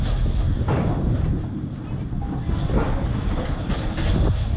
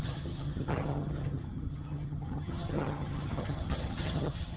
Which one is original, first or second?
first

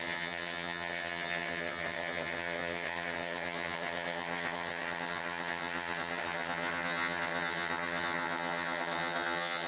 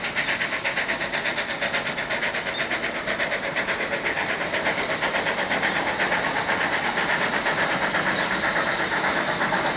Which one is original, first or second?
second